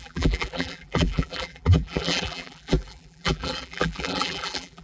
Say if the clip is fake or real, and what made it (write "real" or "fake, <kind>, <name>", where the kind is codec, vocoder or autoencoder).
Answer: fake, vocoder, BigVGAN v2